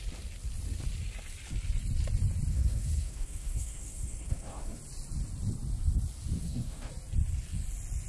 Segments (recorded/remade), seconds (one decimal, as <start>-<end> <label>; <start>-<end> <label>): 0.0-2.5 recorded; 2.5-4.8 remade; 4.8-6.4 recorded; 6.4-6.9 remade; 6.9-8.1 recorded